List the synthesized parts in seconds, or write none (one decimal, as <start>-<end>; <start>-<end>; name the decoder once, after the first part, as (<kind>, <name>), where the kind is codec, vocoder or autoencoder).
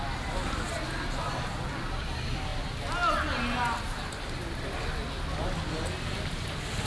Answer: none